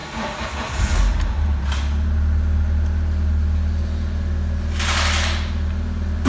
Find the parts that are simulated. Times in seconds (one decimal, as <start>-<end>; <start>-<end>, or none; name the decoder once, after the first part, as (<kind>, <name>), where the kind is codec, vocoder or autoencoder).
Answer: none